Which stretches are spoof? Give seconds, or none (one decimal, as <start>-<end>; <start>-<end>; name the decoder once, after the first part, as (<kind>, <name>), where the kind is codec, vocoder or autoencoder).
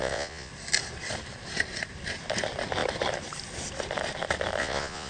0.0-0.5 (vocoder, Vocos); 4.6-5.1